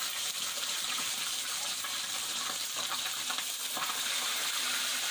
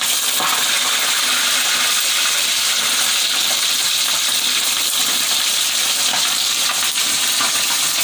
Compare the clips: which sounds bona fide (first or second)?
second